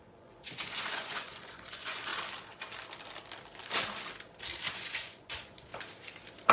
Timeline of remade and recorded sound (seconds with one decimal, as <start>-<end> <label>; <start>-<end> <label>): 0.0-2.1 remade; 2.1-4.7 recorded; 4.7-5.7 remade; 5.7-6.5 recorded